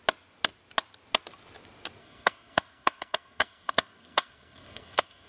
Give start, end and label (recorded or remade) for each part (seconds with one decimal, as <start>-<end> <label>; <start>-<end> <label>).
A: 0.0-2.0 recorded; 2.0-5.3 remade